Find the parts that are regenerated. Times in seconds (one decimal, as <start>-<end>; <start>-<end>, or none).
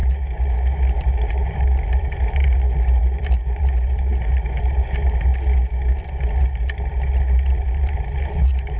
1.1-5.3; 7.5-8.8